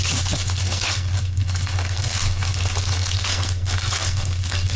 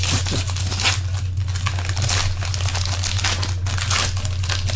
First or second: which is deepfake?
first